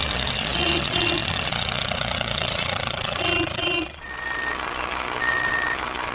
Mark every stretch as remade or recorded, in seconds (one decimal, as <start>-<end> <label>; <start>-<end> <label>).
0.0-6.1 remade